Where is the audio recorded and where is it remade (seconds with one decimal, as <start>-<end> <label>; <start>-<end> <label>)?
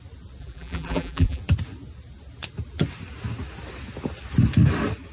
0.0-0.4 recorded; 0.4-1.4 remade; 1.4-5.1 recorded